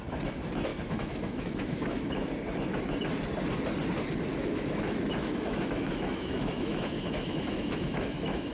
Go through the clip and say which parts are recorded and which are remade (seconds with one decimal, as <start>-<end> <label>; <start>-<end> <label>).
0.0-0.7 recorded; 0.7-2.1 remade; 2.1-4.3 recorded; 4.3-8.5 remade